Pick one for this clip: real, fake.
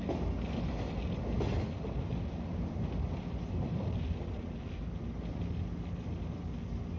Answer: real